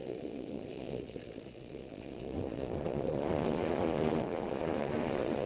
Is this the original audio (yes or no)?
no